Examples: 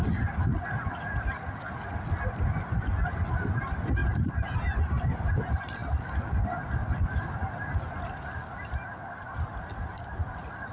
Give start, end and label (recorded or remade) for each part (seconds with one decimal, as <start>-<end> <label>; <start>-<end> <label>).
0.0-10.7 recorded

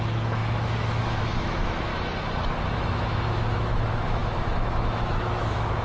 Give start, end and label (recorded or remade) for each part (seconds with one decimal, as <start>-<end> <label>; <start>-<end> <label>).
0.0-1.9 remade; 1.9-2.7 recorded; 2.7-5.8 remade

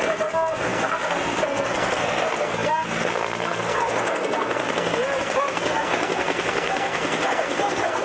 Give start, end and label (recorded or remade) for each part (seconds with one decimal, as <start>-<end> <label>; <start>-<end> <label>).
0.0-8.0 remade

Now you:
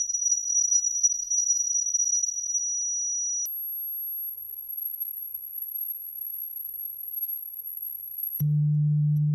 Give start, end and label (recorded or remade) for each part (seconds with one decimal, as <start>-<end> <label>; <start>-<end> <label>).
0.0-2.6 remade; 2.6-4.3 recorded; 4.3-9.3 remade

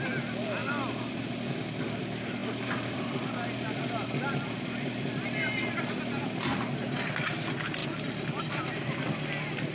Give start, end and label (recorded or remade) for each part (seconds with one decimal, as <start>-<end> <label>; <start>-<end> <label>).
0.0-0.6 recorded; 0.6-1.1 remade; 1.1-2.4 recorded; 2.4-6.0 remade; 6.0-9.7 recorded

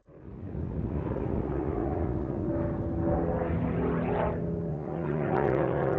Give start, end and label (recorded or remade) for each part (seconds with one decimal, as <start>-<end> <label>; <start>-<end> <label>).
0.0-2.5 remade; 2.5-4.7 recorded; 4.7-6.0 remade

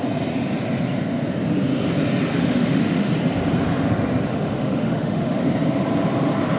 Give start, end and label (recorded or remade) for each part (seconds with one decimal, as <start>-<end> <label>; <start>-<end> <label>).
0.0-2.3 recorded; 2.3-3.1 remade; 3.1-4.3 recorded; 4.3-5.4 remade; 5.4-6.6 recorded